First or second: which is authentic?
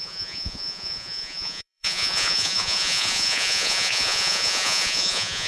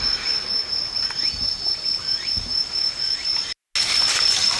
second